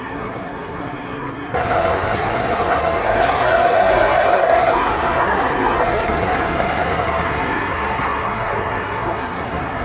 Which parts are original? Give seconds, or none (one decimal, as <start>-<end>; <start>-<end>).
none